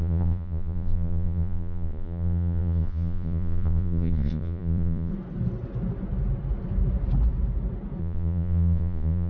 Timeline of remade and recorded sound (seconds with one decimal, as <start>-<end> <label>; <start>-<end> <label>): 0.0-5.1 remade; 5.1-8.0 recorded; 8.0-9.3 remade